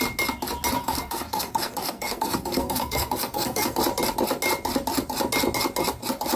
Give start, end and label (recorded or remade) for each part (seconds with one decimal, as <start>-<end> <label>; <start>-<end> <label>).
0.0-0.8 recorded; 0.8-3.8 remade; 3.8-6.4 recorded